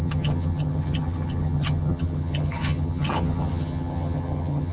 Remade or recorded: remade